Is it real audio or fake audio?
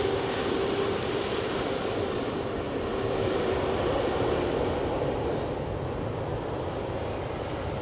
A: fake